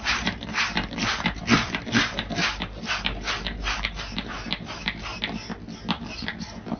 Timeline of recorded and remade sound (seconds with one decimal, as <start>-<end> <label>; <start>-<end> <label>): 0.0-5.1 remade; 5.1-6.2 recorded; 6.2-6.8 remade